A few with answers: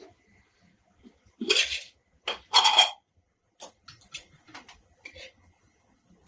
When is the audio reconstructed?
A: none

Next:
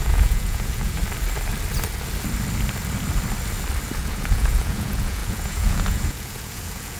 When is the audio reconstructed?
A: 0.0-1.0; 4.0-7.0

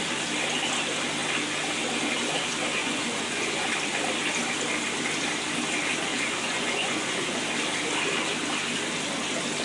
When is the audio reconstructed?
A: 2.8-3.7; 6.1-7.4

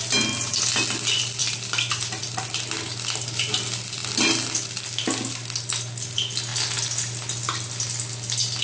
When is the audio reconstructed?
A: none